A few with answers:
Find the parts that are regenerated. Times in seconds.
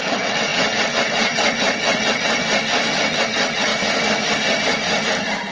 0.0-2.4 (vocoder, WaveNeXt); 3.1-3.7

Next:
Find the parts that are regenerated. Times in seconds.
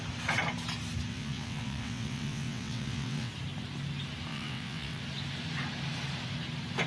1.1-3.3 (vocoder, WaveNeXt); 4.3-5.0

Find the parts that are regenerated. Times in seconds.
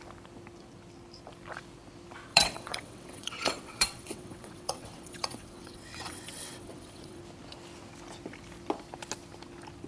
2.3-7.2 (vocoder, WaveNeXt)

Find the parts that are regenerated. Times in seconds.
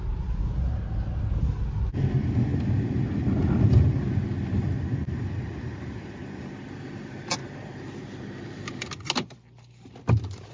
none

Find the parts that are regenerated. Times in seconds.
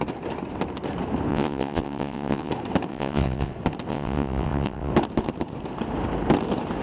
1.3-2.5 (vocoder, WaveNeXt); 2.9-3.5; 3.9-4.9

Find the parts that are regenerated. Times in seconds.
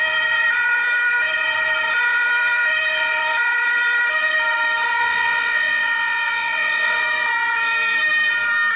5.0-7.0 (vocoder, WaveNeXt)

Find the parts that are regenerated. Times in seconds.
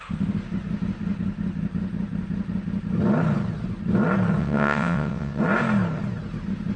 4.4-5.4 (vocoder, WaveNeXt)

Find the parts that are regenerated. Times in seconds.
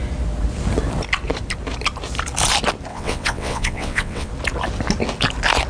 2.9-4.3 (vocoder, WaveNeXt)